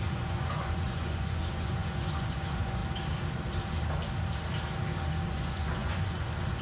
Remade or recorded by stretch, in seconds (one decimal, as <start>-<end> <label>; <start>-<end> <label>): 0.0-2.8 remade; 2.8-5.3 recorded; 5.3-6.6 remade